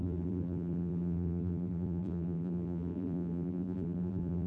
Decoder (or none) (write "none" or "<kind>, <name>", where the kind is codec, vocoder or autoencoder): vocoder, BigVGAN v2